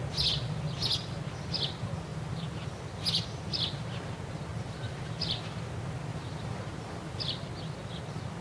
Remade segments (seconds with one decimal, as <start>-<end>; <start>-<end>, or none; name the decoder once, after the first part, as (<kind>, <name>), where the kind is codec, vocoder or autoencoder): 2.1-2.8 (vocoder, BigVGAN v2); 4.5-5.1; 6.1-7.2